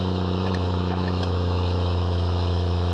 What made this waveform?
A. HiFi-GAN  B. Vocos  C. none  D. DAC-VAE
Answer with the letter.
D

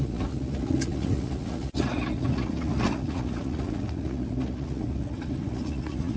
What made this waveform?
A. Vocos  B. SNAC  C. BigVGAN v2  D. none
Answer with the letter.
A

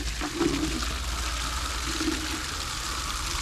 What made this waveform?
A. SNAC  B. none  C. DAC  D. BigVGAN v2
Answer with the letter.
B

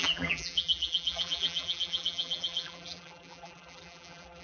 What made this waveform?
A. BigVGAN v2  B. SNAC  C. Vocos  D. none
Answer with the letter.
A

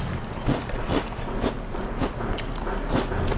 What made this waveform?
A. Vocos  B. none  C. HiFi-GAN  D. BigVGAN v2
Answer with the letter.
B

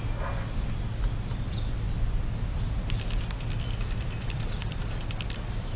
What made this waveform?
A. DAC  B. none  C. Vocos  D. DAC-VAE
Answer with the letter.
B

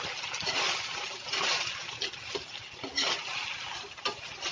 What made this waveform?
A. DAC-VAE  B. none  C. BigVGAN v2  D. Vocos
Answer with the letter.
B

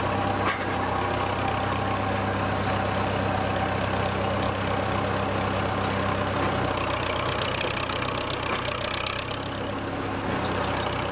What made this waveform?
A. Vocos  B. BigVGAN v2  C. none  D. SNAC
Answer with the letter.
C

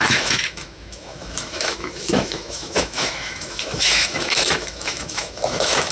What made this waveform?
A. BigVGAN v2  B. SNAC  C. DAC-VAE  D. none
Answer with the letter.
C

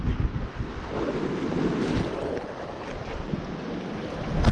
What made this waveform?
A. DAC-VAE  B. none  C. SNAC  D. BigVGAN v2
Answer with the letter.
B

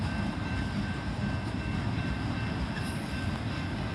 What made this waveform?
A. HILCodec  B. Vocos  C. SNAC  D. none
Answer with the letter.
D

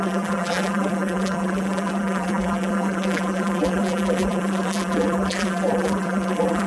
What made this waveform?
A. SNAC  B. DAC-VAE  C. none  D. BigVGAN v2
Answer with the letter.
D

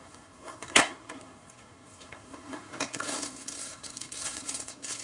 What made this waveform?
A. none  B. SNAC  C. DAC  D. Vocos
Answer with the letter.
B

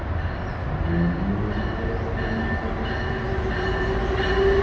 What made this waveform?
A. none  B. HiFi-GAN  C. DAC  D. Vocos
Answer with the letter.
A